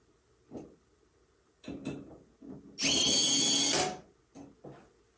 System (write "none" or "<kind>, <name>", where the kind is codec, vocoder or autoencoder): none